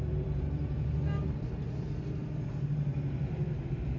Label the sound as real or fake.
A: fake